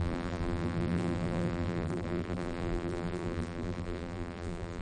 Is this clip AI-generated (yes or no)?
yes